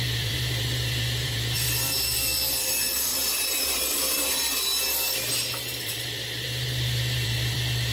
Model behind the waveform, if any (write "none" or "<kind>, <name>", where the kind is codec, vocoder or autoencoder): vocoder, BigVGAN v2